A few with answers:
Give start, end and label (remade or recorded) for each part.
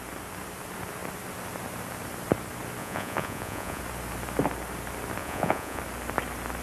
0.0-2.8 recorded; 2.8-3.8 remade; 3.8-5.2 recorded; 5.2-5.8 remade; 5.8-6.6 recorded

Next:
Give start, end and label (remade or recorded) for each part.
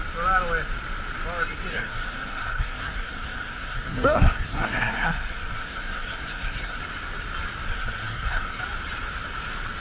0.0-1.7 recorded; 1.7-6.8 remade; 6.8-7.7 recorded; 7.7-8.6 remade; 8.6-9.8 recorded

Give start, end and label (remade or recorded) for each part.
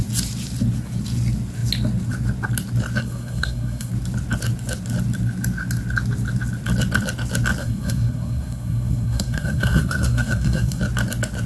0.0-3.0 recorded; 3.0-3.9 remade; 3.9-7.6 recorded; 7.6-10.8 remade; 10.8-11.5 recorded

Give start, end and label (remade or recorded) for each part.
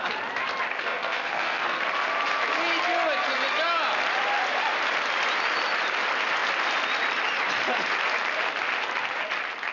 0.0-0.7 recorded; 0.7-1.8 remade; 1.8-9.7 recorded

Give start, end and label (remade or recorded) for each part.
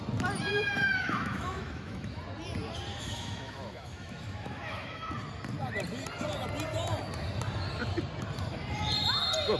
0.0-0.5 recorded; 0.5-2.2 remade; 2.2-2.9 recorded; 2.9-5.1 remade; 5.1-9.6 recorded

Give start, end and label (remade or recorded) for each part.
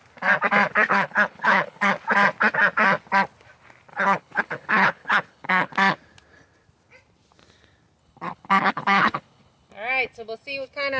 0.0-0.9 recorded; 0.9-1.9 remade; 1.9-3.9 recorded; 3.9-5.7 remade; 5.7-8.0 recorded; 8.0-9.7 remade; 9.7-11.0 recorded